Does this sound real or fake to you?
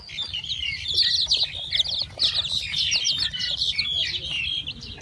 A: real